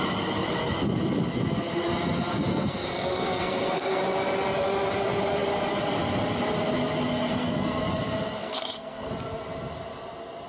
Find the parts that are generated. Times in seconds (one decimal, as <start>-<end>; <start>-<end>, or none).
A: 2.5-4.0; 7.3-7.8; 8.4-9.1